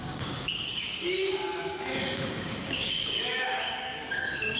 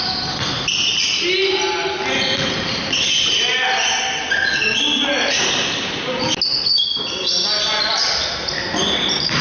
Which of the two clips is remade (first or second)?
first